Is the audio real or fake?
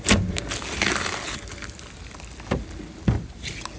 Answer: real